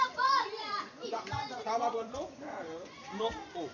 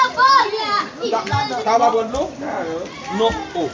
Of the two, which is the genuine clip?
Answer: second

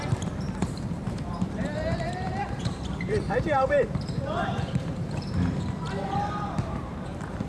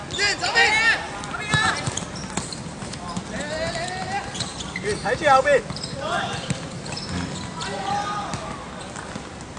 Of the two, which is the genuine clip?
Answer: second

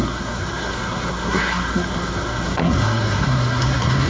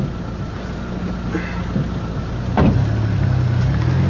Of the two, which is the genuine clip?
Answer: second